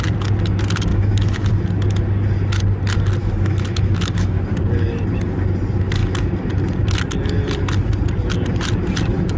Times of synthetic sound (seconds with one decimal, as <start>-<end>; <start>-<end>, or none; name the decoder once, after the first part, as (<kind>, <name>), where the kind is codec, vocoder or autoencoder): 0.9-1.5 (autoencoder, DAC-VAE); 3.2-4.4

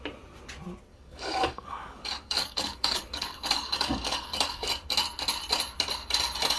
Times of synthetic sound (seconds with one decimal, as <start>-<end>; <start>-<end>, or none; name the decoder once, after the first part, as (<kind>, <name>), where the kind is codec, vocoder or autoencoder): 0.9-4.7 (codec, DAC)

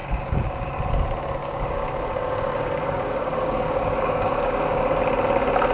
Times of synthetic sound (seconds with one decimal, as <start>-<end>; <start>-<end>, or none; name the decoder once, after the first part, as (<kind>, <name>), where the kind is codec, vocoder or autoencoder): 0.0-0.8 (codec, DAC); 1.4-4.8

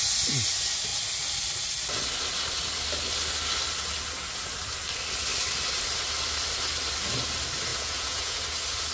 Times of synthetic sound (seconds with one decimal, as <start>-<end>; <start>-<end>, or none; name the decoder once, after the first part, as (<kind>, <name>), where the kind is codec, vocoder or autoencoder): 7.7-8.4 (vocoder, Vocos)